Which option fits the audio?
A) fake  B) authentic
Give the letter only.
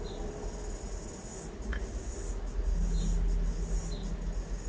B